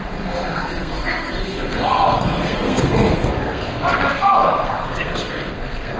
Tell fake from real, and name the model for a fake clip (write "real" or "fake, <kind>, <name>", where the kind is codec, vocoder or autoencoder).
fake, codec, SNAC